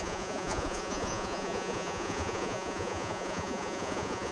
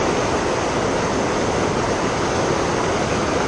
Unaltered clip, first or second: second